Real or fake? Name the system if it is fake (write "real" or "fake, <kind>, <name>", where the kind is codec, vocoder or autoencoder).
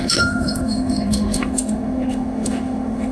fake, autoencoder, DAC-VAE